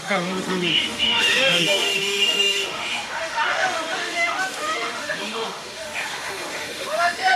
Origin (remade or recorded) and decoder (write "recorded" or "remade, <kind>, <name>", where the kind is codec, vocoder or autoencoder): remade, autoencoder, DAC-VAE